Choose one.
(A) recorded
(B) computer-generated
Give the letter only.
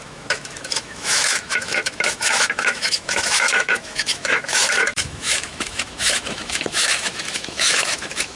B